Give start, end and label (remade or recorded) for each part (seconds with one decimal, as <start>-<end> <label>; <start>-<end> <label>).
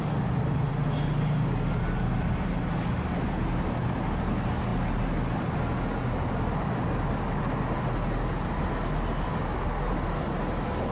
0.0-10.9 recorded